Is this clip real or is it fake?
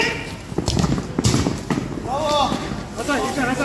real